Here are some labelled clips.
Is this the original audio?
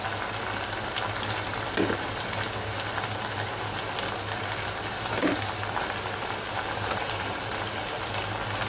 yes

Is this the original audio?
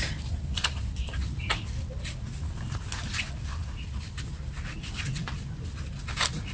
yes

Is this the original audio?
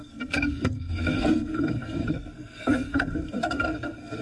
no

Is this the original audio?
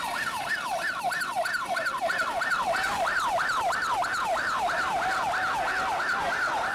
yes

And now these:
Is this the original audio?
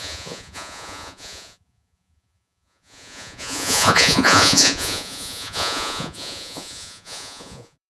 no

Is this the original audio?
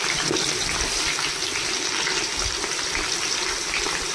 yes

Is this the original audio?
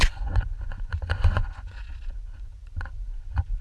no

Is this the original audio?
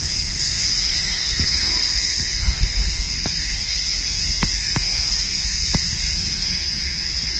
no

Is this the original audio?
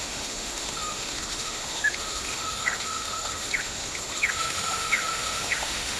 no